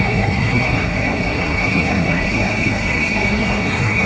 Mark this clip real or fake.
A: fake